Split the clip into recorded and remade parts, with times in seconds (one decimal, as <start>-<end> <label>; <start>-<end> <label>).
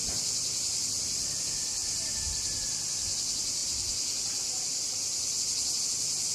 0.0-1.8 remade; 1.8-2.9 recorded; 2.9-6.3 remade